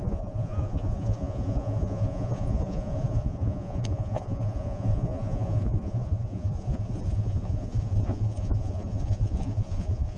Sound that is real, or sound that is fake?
fake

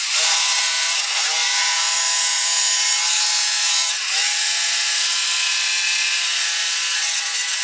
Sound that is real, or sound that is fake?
fake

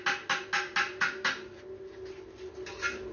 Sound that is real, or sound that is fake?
real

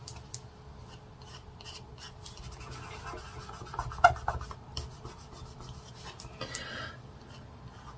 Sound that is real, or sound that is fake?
real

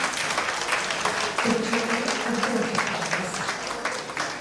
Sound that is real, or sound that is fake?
real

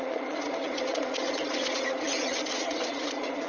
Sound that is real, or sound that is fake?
fake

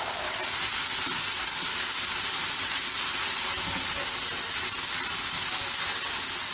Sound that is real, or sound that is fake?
real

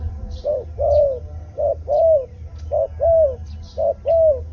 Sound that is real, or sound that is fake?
real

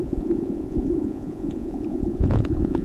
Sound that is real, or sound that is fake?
fake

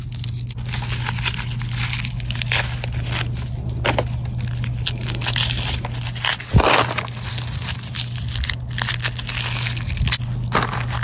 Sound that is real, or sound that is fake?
real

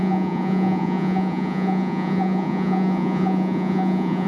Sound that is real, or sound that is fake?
fake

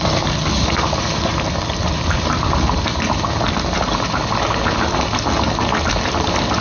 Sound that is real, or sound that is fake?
real